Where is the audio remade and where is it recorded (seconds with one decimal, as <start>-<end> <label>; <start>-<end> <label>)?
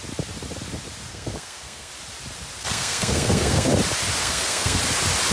0.0-1.1 recorded; 1.1-1.9 remade; 1.9-2.6 recorded; 2.6-3.7 remade; 3.7-4.2 recorded; 4.2-4.8 remade; 4.8-5.3 recorded